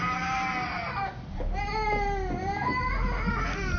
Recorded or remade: recorded